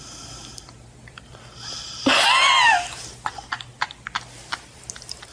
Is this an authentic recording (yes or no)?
yes